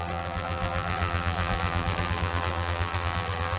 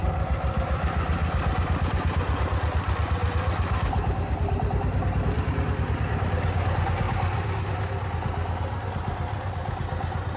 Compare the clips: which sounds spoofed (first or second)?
first